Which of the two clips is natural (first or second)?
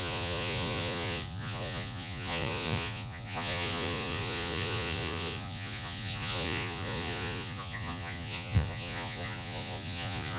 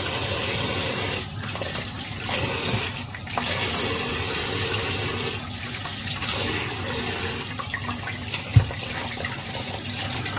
second